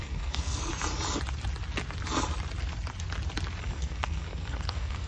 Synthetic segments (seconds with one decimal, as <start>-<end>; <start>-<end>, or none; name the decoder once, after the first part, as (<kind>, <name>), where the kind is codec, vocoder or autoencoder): 0.0-0.7 (codec, SNAC); 3.6-5.1